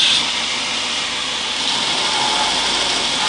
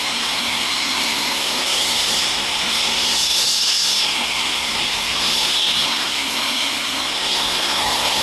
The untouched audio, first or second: first